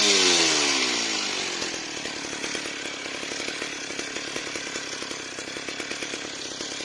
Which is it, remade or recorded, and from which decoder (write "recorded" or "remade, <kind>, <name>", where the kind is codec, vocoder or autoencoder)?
recorded